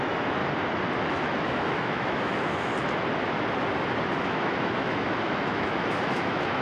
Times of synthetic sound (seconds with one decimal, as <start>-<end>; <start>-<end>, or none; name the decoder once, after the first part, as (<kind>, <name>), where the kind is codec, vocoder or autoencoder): 0.0-0.4 (autoencoder, DAC-VAE); 1.1-2.7; 4.1-6.6